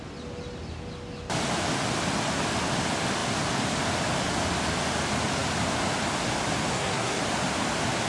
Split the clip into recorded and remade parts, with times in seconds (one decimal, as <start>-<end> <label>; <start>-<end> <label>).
0.0-6.7 recorded; 6.7-7.2 remade; 7.2-8.1 recorded